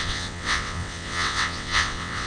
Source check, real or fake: fake